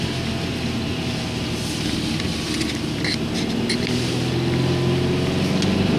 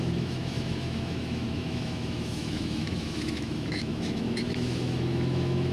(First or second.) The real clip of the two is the first